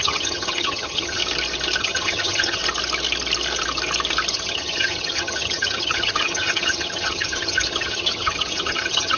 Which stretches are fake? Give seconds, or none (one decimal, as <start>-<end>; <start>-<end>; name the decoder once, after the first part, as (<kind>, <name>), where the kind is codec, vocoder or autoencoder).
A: 0.0-1.2 (vocoder, HiFi-GAN); 1.8-2.6; 4.3-9.2